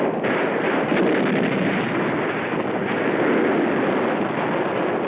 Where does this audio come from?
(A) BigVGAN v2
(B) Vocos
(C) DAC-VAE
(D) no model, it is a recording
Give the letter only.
D